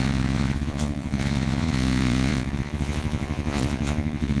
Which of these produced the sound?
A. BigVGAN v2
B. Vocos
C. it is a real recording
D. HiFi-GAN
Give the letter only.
B